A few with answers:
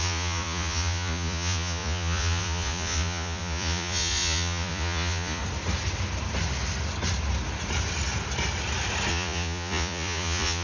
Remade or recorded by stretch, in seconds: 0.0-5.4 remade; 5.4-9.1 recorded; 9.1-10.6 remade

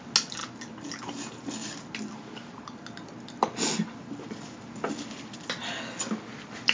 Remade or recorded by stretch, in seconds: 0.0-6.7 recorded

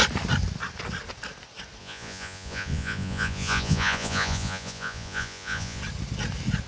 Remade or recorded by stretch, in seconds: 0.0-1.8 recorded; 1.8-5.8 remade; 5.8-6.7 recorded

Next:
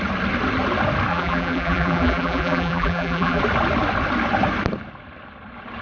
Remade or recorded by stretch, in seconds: 0.0-1.1 recorded; 1.1-3.4 remade; 3.4-5.8 recorded

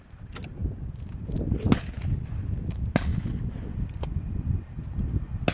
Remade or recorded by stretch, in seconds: 0.0-0.6 remade; 0.6-2.4 recorded; 2.4-3.1 remade; 3.1-4.1 recorded; 4.1-5.5 remade